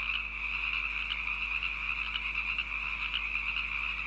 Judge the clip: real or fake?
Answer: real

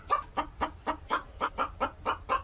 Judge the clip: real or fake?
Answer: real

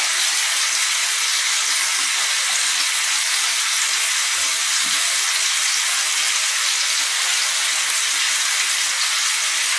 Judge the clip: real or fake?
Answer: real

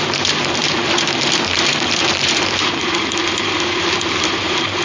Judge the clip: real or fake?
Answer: fake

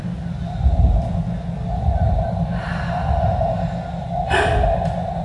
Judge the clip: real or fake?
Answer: real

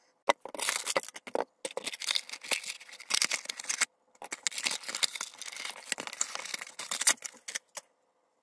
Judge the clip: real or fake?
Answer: real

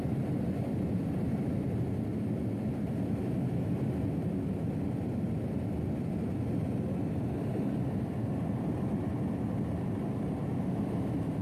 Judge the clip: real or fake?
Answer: real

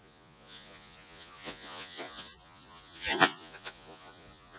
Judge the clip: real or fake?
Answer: fake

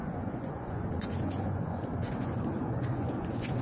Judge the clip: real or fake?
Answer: fake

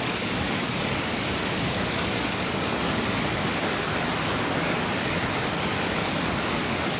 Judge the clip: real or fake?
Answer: fake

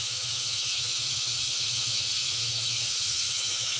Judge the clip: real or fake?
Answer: fake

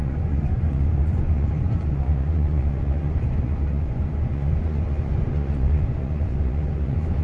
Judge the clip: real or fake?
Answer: fake